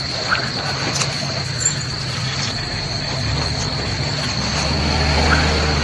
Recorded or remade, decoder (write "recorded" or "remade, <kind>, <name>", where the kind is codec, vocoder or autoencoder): recorded